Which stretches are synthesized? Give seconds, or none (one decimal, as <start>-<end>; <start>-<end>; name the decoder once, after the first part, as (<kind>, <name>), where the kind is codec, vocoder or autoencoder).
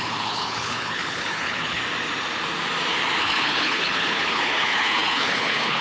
0.0-1.8 (codec, HILCodec); 3.2-5.8